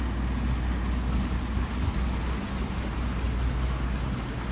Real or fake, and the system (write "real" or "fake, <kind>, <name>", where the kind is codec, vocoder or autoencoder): real